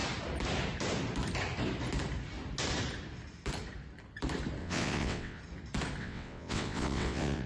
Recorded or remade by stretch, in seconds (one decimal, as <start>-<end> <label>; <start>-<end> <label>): 0.0-4.6 recorded; 4.6-5.4 remade; 5.4-6.0 recorded; 6.0-7.5 remade